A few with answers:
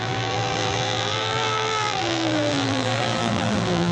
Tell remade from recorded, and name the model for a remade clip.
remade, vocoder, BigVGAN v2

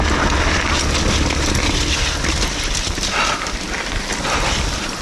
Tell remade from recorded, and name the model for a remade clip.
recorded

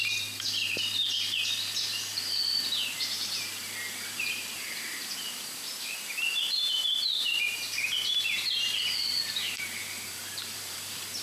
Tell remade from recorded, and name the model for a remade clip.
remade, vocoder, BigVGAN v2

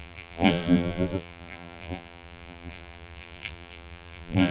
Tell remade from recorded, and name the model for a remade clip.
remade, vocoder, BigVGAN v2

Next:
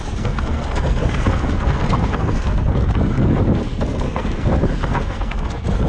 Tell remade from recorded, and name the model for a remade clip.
remade, codec, SNAC